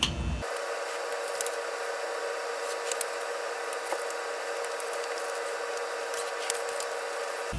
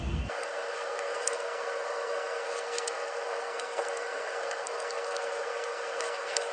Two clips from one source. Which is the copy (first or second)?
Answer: second